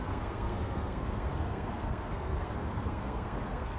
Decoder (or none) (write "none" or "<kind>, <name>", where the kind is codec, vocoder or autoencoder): codec, SNAC